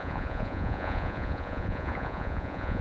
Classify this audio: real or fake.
fake